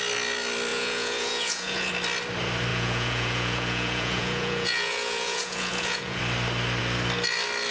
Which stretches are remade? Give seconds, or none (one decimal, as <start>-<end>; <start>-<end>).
0.7-1.9; 2.7-6.2